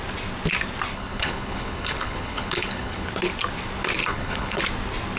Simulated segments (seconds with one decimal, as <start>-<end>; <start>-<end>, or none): 0.9-3.1; 4.0-4.6